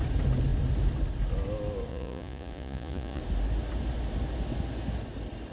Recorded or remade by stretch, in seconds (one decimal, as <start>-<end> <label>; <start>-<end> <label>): 0.0-1.9 recorded; 1.9-3.2 remade; 3.2-5.5 recorded